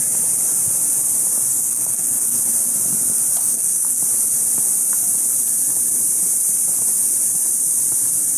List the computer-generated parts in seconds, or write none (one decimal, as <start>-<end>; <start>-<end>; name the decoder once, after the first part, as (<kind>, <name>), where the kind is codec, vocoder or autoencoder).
1.5-2.4 (codec, SNAC); 3.4-4.0